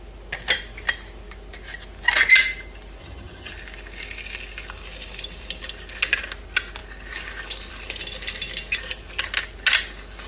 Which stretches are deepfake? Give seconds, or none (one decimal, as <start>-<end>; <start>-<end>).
3.0-3.5